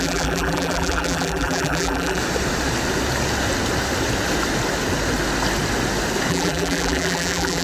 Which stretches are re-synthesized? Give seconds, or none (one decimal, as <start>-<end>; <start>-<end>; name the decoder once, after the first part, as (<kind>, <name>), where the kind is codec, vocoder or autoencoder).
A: 0.0-2.2 (vocoder, BigVGAN v2); 6.3-7.6